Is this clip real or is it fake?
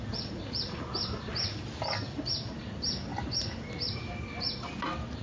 real